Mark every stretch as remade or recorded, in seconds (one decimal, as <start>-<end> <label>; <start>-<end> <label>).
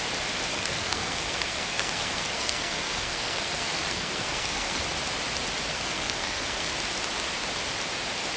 0.0-0.5 recorded; 0.5-4.8 remade; 4.8-5.7 recorded; 5.7-6.7 remade; 6.7-8.4 recorded